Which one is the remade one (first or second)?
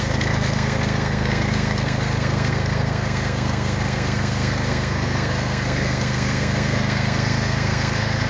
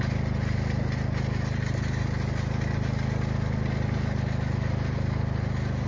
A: first